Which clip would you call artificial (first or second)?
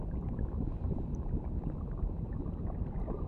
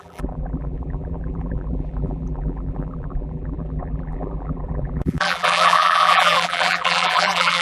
second